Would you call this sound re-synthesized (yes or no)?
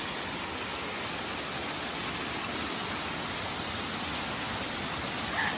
no